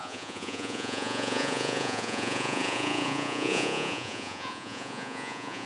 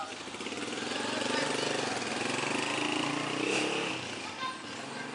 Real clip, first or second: second